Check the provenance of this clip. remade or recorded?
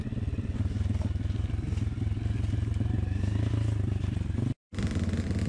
recorded